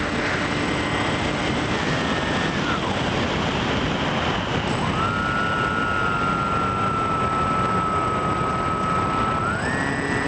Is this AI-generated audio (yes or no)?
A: no